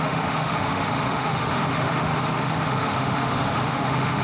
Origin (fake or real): fake